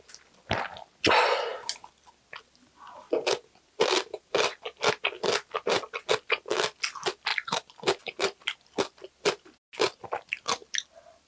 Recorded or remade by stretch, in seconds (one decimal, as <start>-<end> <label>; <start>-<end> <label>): 0.0-11.3 recorded